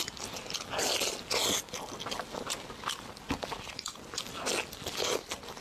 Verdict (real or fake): real